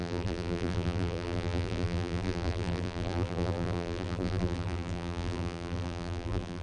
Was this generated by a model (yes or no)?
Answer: yes